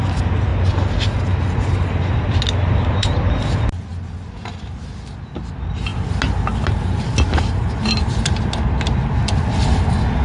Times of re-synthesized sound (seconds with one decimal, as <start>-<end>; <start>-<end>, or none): none